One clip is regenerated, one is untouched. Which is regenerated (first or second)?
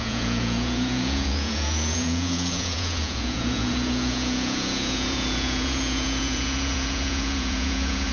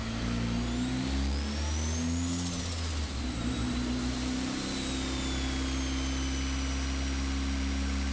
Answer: first